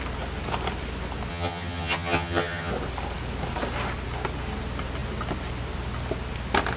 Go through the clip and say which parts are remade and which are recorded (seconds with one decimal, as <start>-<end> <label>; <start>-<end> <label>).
0.0-1.3 recorded; 1.3-2.7 remade; 2.7-6.8 recorded